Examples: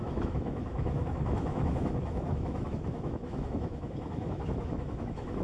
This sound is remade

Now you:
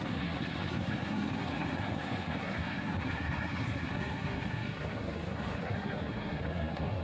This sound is remade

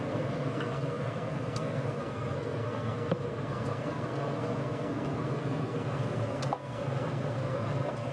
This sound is remade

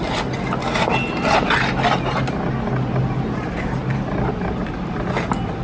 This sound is recorded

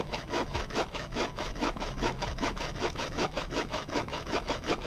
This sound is remade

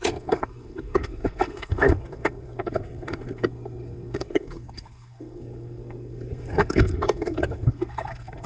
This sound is remade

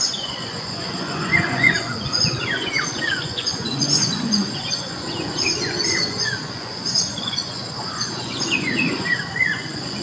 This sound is remade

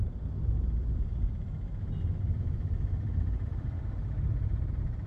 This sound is remade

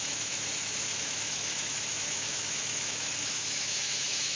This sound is remade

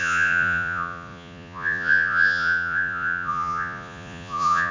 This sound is remade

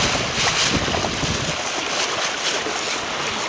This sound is recorded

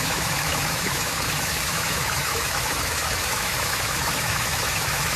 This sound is remade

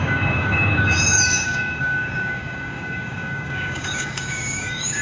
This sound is remade